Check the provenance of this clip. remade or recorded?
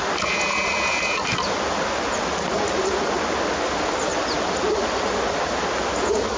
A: recorded